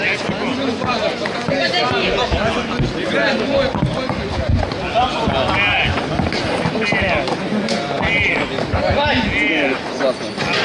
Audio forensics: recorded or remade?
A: recorded